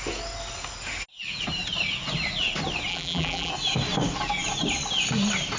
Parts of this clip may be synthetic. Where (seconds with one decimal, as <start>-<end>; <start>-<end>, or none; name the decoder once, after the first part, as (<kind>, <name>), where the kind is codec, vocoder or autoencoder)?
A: 2.9-3.5 (vocoder, BigVGAN v2)